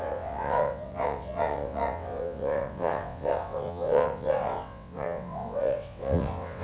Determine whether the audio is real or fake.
fake